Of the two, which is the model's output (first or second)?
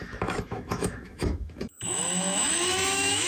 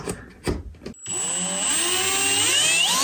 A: first